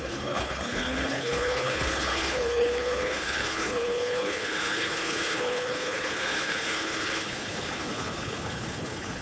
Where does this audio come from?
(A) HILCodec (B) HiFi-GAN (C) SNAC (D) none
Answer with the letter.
A